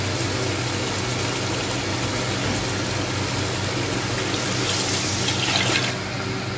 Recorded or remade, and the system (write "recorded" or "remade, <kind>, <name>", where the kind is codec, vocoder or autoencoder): recorded